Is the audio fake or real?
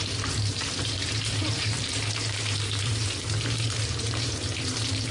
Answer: fake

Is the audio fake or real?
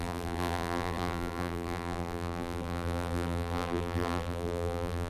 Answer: fake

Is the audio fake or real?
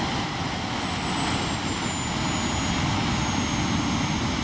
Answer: real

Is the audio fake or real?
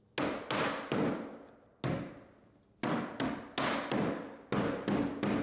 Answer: real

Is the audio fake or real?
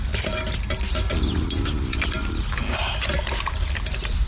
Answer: real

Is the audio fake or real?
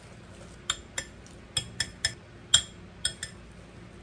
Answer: real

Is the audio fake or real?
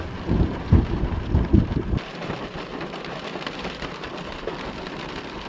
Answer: fake